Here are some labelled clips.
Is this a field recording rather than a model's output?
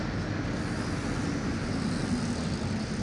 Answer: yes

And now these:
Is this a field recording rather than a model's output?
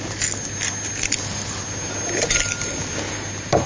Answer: yes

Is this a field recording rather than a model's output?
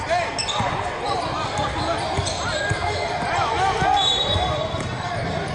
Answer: yes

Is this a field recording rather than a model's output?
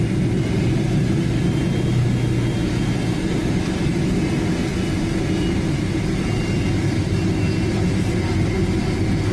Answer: yes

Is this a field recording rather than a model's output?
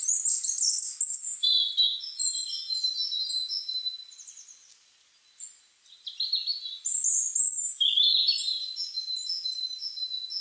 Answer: yes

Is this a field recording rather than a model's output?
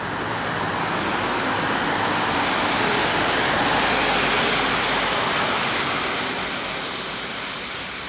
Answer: yes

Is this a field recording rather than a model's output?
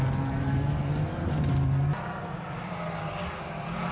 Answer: yes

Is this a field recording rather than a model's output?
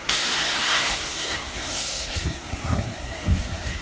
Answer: no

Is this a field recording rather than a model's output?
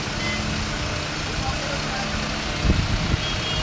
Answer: yes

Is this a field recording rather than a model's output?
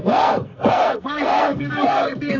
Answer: no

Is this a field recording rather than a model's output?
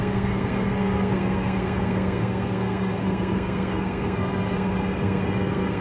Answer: no